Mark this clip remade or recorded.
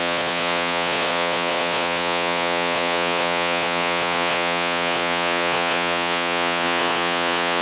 remade